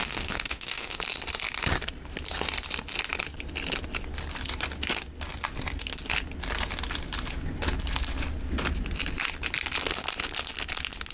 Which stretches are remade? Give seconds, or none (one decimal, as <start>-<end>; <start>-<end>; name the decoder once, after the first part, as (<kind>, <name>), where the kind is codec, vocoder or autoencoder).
0.0-1.0 (autoencoder, DAC-VAE)